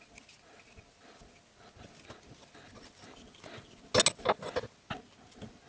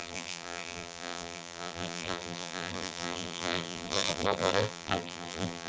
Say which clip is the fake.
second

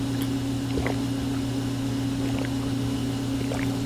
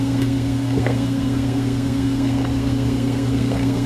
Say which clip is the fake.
second